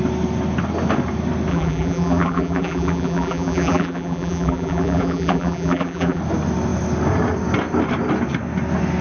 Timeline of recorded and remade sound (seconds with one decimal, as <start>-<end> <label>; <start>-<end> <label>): 0.0-1.5 recorded; 1.5-6.2 remade; 6.2-9.0 recorded